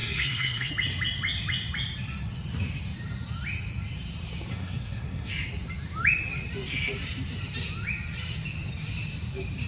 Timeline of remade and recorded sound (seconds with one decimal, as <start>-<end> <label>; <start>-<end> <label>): 0.0-0.7 remade; 0.7-4.5 recorded; 4.5-5.3 remade; 5.3-9.7 recorded